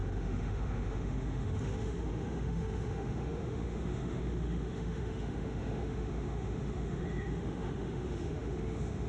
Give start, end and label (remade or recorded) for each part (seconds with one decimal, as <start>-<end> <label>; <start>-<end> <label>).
0.0-9.1 remade